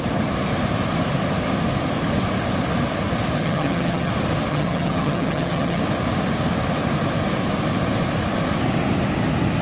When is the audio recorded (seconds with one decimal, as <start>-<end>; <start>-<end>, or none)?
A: 0.0-3.4; 4.1-4.5; 5.8-9.6